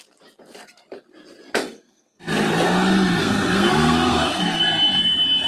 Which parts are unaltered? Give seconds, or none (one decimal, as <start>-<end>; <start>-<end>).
0.0-1.6; 2.2-3.2; 4.6-5.5